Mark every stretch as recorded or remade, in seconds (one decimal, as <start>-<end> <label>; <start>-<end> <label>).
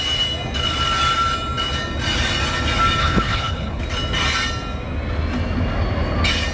0.0-3.0 recorded; 3.0-3.8 remade; 3.8-6.5 recorded